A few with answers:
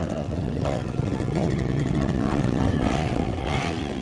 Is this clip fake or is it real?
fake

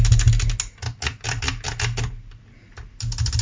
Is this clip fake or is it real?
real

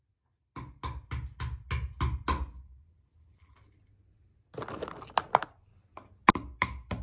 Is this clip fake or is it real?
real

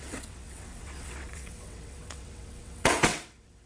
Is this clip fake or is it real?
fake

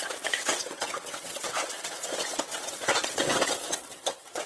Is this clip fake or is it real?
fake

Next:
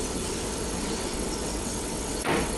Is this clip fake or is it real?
fake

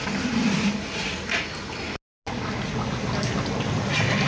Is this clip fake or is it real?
real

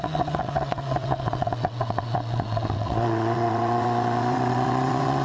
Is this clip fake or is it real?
fake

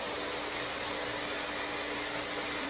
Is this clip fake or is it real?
real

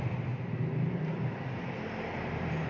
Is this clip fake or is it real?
real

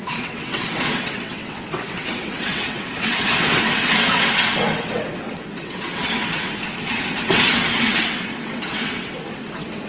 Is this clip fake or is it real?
fake